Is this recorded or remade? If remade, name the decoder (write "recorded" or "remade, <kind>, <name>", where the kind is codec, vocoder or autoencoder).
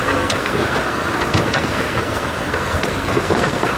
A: remade, codec, SNAC